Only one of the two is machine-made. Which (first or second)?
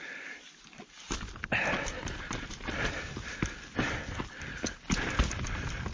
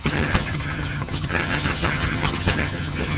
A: second